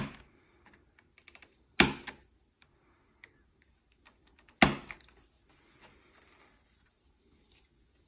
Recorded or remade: recorded